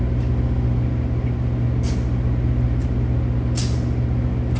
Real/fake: real